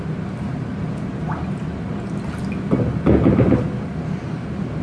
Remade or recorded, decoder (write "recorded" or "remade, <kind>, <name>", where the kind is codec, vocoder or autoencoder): recorded